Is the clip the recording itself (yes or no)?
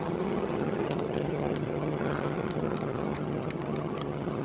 no